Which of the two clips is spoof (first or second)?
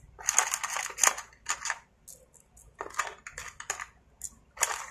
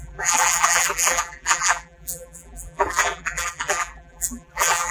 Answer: second